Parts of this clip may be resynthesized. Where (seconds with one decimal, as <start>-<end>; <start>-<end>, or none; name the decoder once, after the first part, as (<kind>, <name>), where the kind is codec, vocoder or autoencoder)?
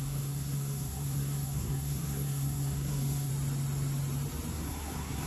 0.0-3.3 (codec, SNAC); 4.5-5.3